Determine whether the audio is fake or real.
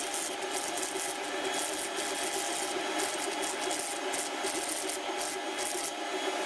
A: real